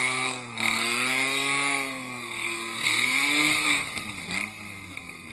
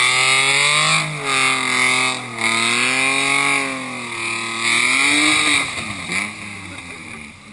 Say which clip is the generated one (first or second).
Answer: first